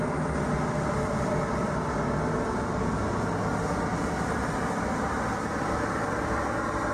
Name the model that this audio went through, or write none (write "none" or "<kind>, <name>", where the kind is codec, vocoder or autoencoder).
none